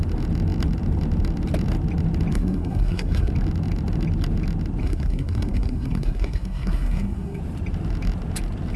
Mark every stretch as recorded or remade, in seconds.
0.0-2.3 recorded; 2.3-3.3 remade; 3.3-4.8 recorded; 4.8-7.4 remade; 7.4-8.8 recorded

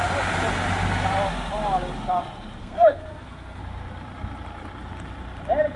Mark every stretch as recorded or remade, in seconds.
0.0-2.6 recorded; 2.6-3.6 remade; 3.6-5.8 recorded

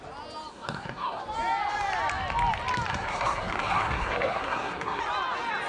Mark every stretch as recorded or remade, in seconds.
0.0-0.5 recorded; 0.5-1.2 remade; 1.2-2.9 recorded; 2.9-5.0 remade; 5.0-5.7 recorded

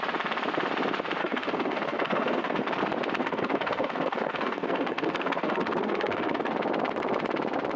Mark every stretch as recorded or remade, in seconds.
0.0-1.2 recorded; 1.2-2.8 remade; 2.8-3.2 recorded; 3.2-6.5 remade; 6.5-7.8 recorded